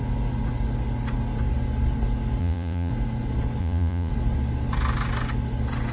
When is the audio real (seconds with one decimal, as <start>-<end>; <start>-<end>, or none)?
0.0-2.4; 2.9-3.6; 4.1-5.9